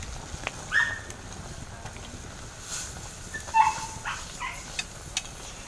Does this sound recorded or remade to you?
recorded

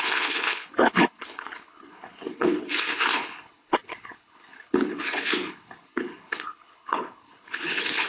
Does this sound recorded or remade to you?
remade